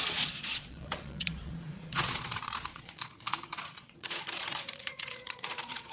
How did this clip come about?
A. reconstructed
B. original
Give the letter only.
A